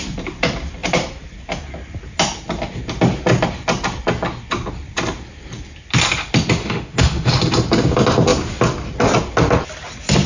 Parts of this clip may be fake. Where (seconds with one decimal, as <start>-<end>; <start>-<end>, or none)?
6.6-7.3